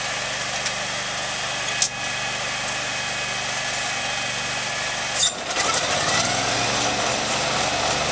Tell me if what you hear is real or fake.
real